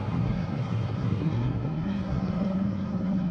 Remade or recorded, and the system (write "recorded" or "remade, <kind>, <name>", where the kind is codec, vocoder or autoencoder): remade, codec, SNAC